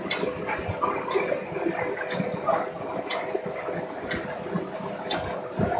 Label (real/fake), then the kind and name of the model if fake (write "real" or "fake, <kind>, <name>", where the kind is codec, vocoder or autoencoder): real